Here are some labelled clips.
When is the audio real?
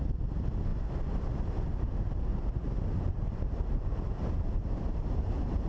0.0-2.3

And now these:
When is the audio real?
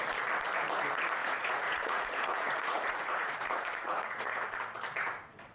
0.0-1.2; 4.5-5.5